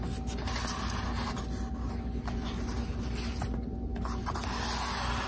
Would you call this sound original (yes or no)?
yes